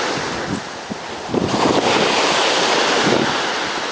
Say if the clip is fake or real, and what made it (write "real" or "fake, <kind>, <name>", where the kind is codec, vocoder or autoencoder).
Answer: real